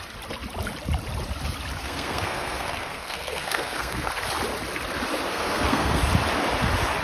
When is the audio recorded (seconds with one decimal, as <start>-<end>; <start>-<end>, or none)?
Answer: 0.0-1.8; 4.1-5.3; 6.0-7.0